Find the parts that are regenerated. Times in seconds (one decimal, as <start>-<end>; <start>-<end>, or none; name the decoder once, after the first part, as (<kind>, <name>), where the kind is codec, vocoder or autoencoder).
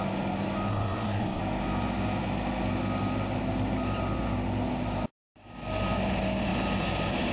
0.7-1.4 (codec, SNAC)